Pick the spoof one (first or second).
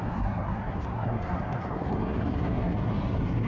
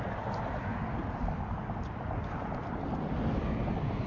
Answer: first